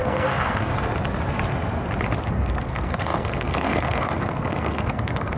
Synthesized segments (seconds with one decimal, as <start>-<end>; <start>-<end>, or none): 0.0-0.7; 2.3-5.4